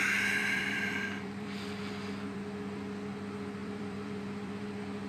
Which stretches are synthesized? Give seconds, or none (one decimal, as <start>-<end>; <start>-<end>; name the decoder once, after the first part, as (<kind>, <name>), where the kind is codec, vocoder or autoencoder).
0.4-2.4 (vocoder, BigVGAN v2); 3.6-5.1